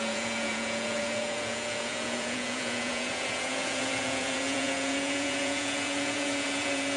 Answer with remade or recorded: remade